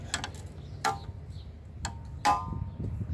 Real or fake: real